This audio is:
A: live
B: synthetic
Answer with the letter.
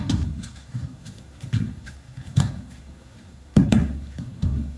B